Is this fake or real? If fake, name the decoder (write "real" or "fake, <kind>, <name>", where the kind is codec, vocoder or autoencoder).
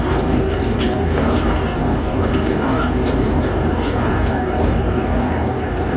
fake, codec, DAC